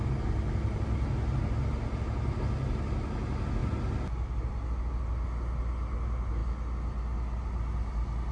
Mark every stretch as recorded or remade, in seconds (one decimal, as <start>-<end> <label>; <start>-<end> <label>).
0.0-8.3 recorded